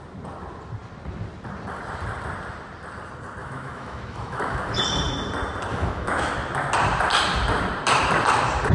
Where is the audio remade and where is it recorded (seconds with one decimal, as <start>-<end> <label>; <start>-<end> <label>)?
0.0-3.4 recorded; 3.4-4.8 remade; 4.8-5.7 recorded; 5.7-6.3 remade; 6.3-8.7 recorded